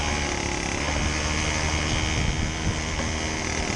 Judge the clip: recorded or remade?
recorded